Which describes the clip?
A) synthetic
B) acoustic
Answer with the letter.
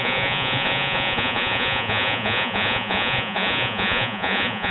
A